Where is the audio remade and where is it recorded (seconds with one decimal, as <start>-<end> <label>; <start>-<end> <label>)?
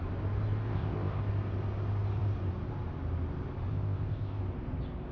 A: 0.0-0.7 recorded; 0.7-1.2 remade; 1.2-3.7 recorded; 3.7-4.4 remade; 4.4-5.1 recorded